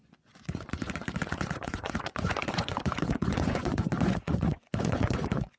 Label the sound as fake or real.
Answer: fake